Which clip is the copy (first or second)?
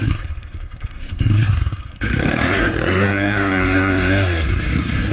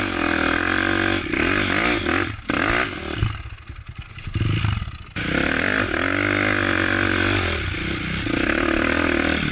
first